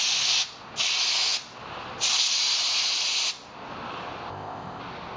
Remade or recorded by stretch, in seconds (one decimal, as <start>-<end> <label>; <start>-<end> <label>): 0.0-4.3 recorded; 4.3-4.8 remade; 4.8-5.2 recorded